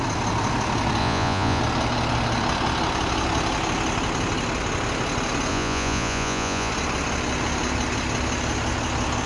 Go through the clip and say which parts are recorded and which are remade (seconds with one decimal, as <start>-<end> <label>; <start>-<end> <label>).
0.0-1.0 recorded; 1.0-1.6 remade; 1.6-5.5 recorded; 5.5-6.7 remade; 6.7-9.3 recorded